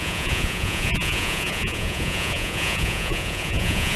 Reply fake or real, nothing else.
fake